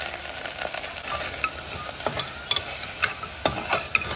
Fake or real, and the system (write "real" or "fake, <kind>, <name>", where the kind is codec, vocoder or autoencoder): real